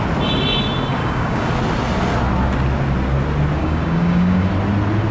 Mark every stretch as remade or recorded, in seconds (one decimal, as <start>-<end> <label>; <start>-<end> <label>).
0.0-1.0 recorded; 1.0-1.5 remade; 1.5-3.6 recorded; 3.6-4.5 remade; 4.5-5.1 recorded